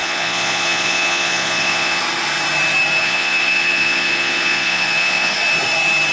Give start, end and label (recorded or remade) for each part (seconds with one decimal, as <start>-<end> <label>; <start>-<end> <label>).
0.0-2.0 remade; 2.0-3.0 recorded; 3.0-5.3 remade; 5.3-6.1 recorded